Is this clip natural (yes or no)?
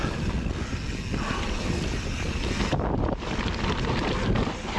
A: yes